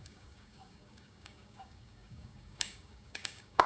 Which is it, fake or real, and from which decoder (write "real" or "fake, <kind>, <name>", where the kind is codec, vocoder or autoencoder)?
fake, codec, DAC